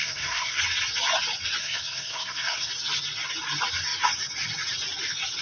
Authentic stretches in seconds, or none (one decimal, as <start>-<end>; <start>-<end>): 0.6-1.6; 2.7-5.4